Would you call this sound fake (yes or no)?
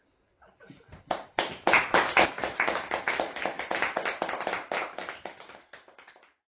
no